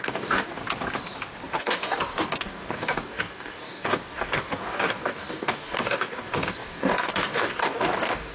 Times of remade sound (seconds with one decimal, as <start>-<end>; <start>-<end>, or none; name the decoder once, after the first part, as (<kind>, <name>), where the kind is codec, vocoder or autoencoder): 0.0-0.6 (codec, DAC); 1.6-8.3